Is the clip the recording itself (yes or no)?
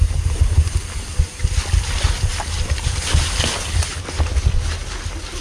yes